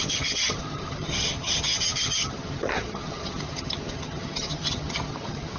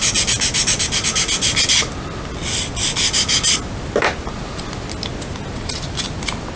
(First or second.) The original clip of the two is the second